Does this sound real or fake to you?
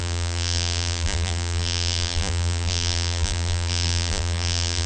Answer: fake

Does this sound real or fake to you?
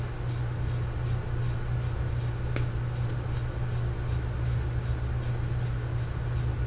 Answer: real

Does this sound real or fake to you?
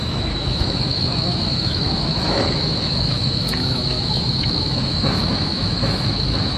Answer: fake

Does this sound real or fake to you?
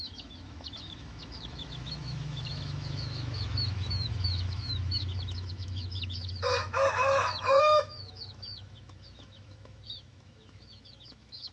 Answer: fake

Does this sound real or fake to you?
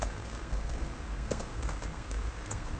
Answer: fake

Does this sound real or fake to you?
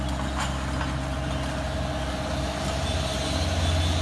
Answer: real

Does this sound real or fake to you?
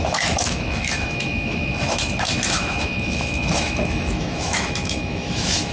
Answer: fake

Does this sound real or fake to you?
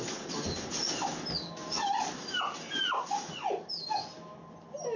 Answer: real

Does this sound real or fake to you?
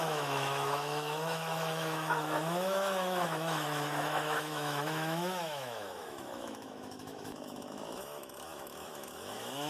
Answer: fake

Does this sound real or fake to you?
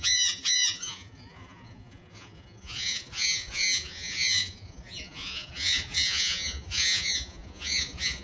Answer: fake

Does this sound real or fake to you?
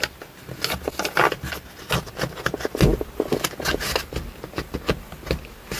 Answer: real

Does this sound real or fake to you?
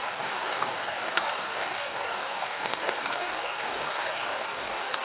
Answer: fake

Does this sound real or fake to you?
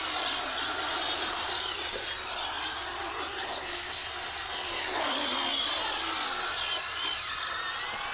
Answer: real